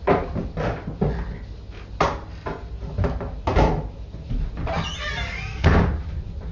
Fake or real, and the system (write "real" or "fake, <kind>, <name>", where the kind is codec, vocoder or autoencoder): real